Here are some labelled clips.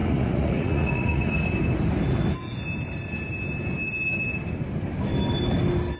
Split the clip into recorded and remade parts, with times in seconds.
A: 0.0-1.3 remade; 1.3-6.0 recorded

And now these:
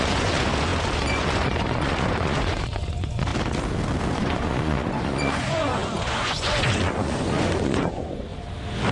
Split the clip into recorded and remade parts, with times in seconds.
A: 0.0-3.3 remade; 3.3-4.1 recorded; 4.1-8.3 remade; 8.3-8.9 recorded